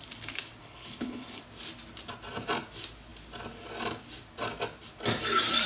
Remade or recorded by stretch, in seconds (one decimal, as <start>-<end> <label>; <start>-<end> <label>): 0.0-0.6 recorded; 0.6-1.4 remade; 1.4-5.7 recorded